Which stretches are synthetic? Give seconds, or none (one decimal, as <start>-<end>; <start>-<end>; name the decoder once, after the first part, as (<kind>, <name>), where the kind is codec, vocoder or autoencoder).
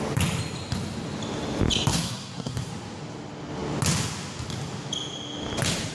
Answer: 1.9-2.7 (codec, SNAC)